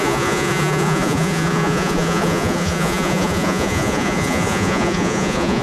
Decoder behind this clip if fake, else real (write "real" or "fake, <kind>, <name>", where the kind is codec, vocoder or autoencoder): fake, vocoder, Vocos